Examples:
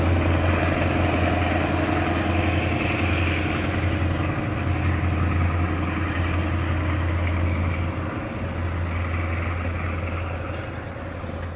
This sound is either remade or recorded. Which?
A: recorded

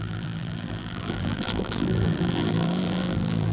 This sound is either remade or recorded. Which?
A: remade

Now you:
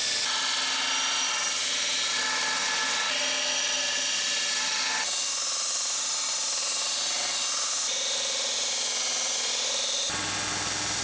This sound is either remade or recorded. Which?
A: recorded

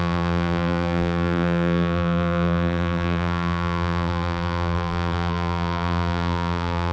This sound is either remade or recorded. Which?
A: remade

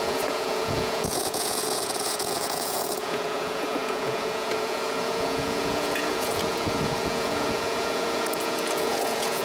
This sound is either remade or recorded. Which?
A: remade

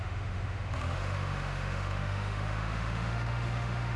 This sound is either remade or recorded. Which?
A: remade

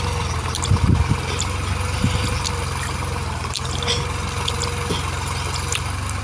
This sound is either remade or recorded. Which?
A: recorded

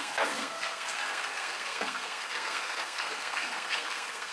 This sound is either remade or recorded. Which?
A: remade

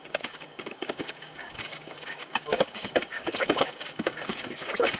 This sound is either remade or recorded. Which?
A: remade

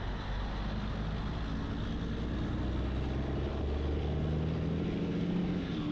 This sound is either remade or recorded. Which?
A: recorded